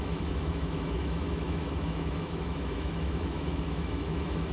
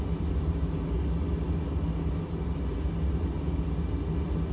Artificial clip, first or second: first